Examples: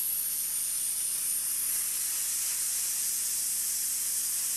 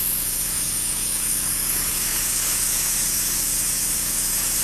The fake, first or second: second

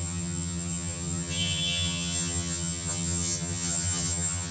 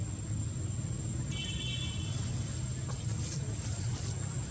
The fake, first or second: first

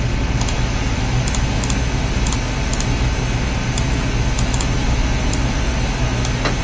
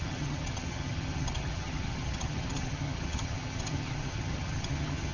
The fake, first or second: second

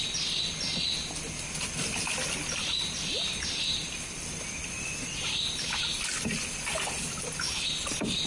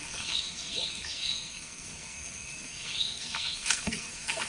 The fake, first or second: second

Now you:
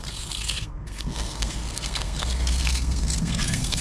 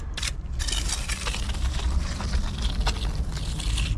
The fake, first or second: first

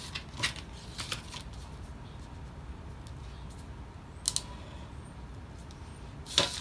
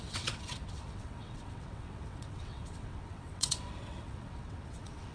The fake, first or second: second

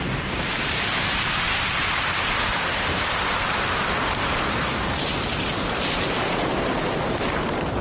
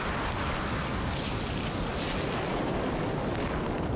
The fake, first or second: first